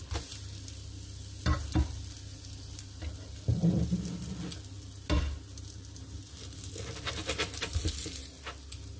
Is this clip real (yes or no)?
yes